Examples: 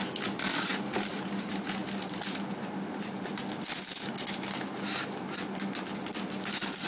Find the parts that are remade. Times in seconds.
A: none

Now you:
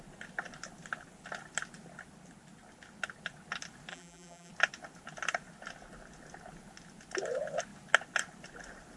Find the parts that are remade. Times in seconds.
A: 3.9-4.5 (vocoder, BigVGAN v2)

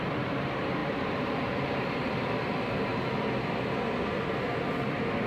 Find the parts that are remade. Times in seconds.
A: 0.0-2.0 (vocoder, BigVGAN v2)

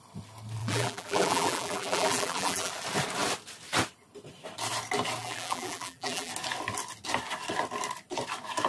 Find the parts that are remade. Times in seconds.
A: 0.6-2.7 (vocoder, BigVGAN v2); 5.2-6.3

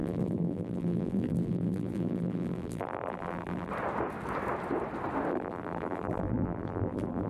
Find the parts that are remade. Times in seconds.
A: 0.0-3.7 (vocoder, BigVGAN v2); 5.3-7.3